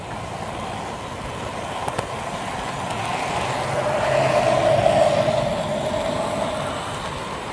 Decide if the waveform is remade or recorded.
recorded